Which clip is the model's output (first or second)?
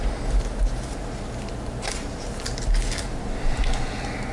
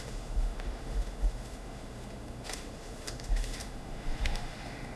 second